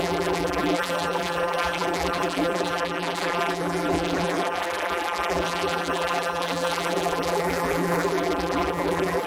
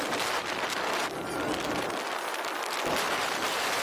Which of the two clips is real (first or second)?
second